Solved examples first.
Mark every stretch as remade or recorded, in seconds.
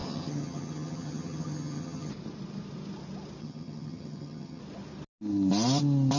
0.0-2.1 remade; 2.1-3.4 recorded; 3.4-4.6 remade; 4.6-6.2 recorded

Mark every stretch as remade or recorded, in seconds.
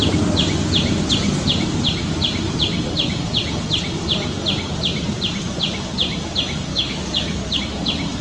0.0-6.7 recorded; 6.7-7.6 remade; 7.6-8.2 recorded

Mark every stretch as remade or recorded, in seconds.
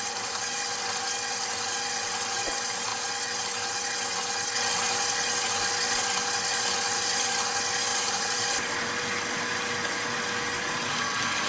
0.0-7.9 recorded; 7.9-9.0 remade; 9.0-11.5 recorded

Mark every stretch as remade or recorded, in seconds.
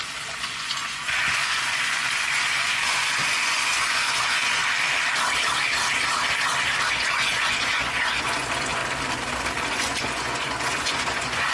0.0-4.6 remade; 4.6-6.9 recorded; 6.9-8.8 remade; 8.8-9.7 recorded; 9.7-11.5 remade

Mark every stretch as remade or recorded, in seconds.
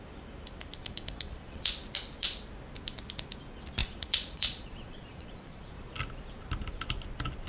0.0-0.8 recorded; 0.8-1.7 remade; 1.7-3.8 recorded; 3.8-5.8 remade; 5.8-7.5 recorded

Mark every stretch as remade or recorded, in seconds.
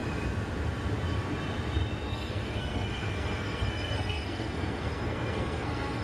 0.0-2.1 recorded; 2.1-6.0 remade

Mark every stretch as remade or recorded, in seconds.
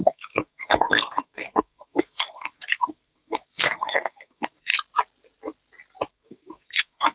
0.0-4.7 remade; 4.7-6.1 recorded; 6.1-7.1 remade